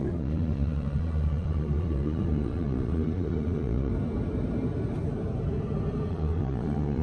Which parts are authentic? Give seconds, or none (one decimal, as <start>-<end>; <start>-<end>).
3.9-6.1